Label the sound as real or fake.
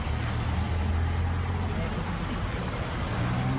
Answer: real